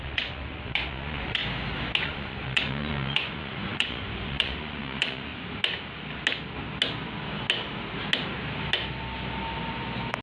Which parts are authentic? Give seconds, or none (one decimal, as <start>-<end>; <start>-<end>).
1.4-2.0; 5.3-10.2